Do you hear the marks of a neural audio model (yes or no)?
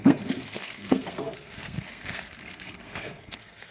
yes